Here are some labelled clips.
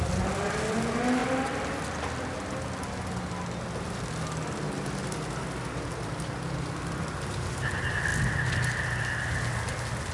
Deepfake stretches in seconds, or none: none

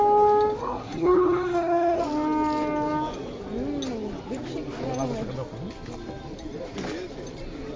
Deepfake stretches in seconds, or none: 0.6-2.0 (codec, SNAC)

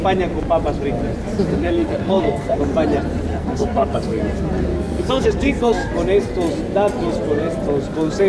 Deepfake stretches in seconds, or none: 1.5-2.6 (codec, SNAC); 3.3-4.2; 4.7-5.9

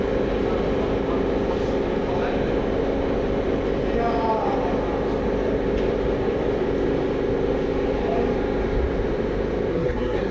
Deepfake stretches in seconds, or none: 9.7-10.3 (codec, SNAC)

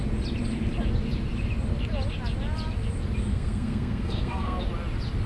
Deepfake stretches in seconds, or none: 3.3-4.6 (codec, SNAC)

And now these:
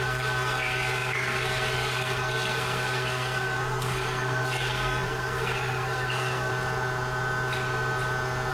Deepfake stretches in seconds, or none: 0.0-6.5 (codec, SNAC)

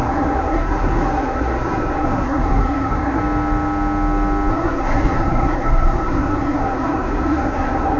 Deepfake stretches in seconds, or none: 0.0-3.2 (codec, SNAC); 4.5-8.0

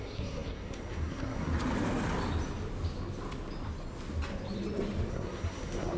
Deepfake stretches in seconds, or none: 0.0-1.5 (codec, SNAC); 5.1-6.0